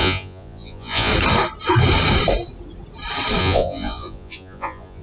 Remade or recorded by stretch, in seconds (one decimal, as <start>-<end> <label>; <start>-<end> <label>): 0.0-1.1 remade; 1.1-3.4 recorded; 3.4-5.0 remade

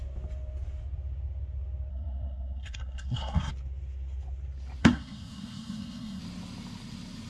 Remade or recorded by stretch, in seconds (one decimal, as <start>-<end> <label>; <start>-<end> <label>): 0.0-1.9 recorded; 1.9-3.5 remade; 3.5-4.8 recorded; 4.8-6.2 remade; 6.2-7.3 recorded

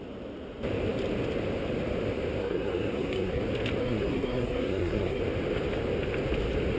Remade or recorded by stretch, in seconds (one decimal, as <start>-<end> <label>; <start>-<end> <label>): 0.0-2.4 recorded; 2.4-3.4 remade; 3.4-3.8 recorded; 3.8-5.2 remade; 5.2-6.8 recorded

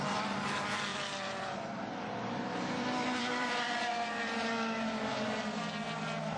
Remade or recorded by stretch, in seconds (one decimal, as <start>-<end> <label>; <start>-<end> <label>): 0.0-0.9 recorded; 0.9-3.9 remade; 3.9-6.4 recorded

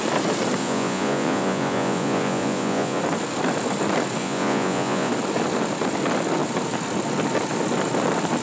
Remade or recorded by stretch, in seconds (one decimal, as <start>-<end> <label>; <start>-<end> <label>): 0.0-0.6 recorded; 0.6-3.0 remade; 3.0-4.2 recorded; 4.2-5.1 remade; 5.1-8.4 recorded

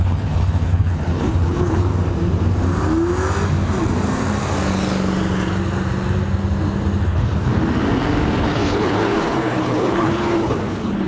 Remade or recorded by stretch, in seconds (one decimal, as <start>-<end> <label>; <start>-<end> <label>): 0.0-1.9 remade; 1.9-7.0 recorded; 7.0-7.5 remade; 7.5-8.4 recorded; 8.4-11.1 remade

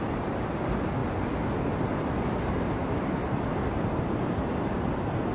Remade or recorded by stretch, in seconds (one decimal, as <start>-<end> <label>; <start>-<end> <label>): 0.0-3.2 recorded; 3.2-4.0 remade; 4.0-5.3 recorded

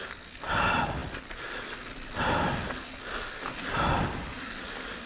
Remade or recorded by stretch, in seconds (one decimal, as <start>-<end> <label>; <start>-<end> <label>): 0.0-5.1 recorded